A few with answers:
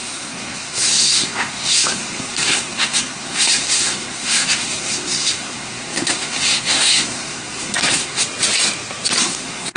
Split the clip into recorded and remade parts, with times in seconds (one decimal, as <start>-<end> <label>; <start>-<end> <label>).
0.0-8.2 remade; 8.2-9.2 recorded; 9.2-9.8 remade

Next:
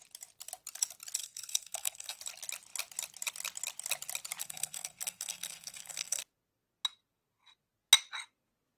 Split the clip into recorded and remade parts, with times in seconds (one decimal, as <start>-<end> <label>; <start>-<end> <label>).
0.0-1.2 recorded; 1.2-2.2 remade; 2.2-4.4 recorded; 4.4-6.2 remade; 6.2-8.8 recorded

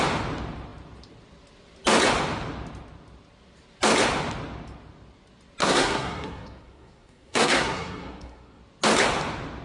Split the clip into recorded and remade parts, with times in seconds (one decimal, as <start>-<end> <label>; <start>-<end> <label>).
0.0-5.6 recorded; 5.6-8.6 remade; 8.6-9.6 recorded